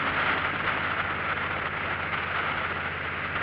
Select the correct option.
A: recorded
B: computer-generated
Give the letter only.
A